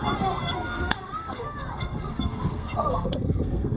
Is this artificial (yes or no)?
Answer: yes